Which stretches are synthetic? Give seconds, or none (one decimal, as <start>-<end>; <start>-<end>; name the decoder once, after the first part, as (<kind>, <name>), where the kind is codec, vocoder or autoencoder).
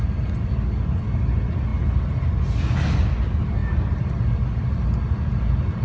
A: none